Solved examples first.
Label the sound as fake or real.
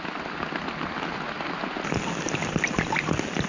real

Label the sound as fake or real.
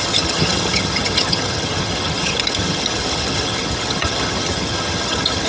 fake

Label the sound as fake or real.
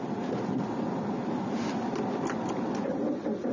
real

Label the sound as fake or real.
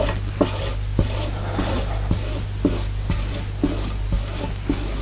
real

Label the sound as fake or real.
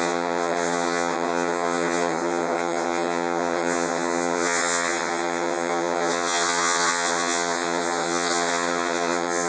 fake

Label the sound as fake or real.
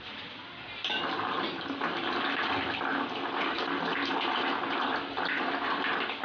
real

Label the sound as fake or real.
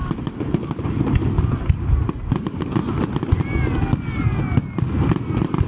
real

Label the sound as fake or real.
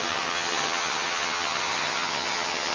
fake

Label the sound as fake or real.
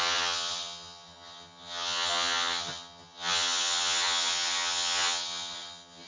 fake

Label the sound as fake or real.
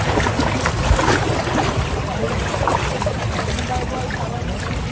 real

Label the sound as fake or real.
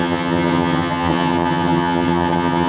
fake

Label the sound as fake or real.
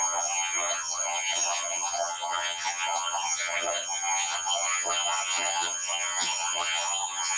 fake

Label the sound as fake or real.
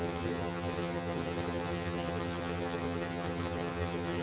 fake